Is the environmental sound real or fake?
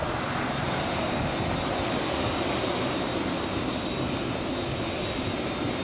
real